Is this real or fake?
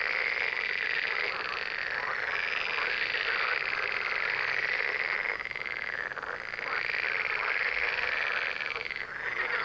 real